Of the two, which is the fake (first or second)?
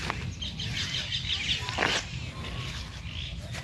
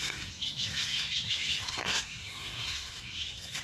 second